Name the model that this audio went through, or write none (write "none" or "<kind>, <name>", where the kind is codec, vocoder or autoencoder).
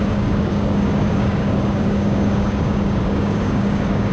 codec, DAC